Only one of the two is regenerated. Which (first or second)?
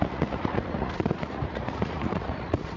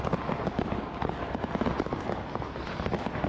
first